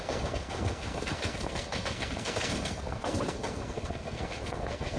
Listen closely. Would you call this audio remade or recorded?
remade